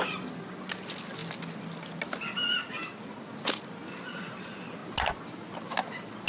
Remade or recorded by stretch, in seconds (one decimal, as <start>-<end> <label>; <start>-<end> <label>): 0.0-6.3 recorded